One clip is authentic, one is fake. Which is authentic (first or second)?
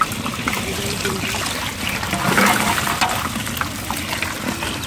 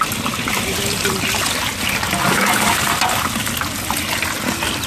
second